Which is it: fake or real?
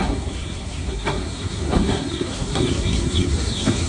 fake